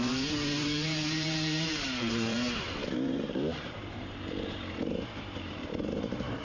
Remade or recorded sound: remade